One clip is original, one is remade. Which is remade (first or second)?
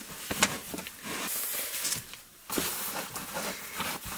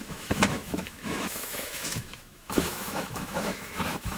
second